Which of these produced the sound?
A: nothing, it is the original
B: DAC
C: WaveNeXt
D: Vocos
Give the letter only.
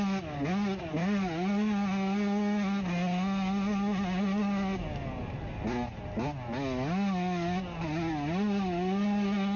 A